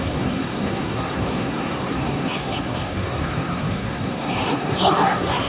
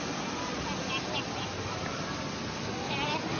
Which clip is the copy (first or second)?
first